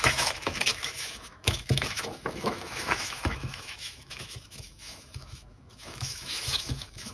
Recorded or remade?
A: remade